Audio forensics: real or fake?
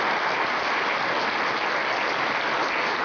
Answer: real